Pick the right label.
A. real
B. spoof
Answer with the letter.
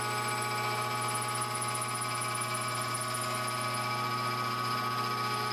A